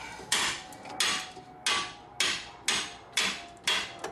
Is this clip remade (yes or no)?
no